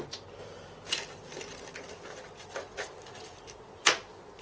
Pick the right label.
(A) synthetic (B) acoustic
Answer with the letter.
B